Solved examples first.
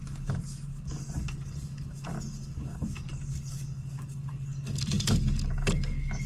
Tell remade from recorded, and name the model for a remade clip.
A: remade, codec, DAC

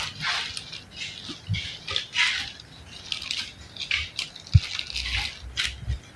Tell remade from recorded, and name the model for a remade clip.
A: recorded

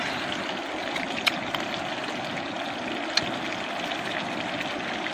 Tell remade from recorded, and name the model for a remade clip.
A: recorded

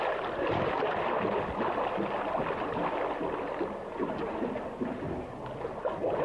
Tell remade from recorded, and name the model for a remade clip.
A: recorded